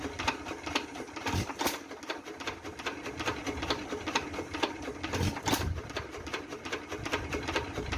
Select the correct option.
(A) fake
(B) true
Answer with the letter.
B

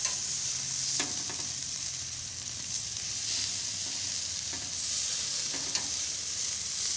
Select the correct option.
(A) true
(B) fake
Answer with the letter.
A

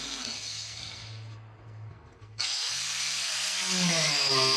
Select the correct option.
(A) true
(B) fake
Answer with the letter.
B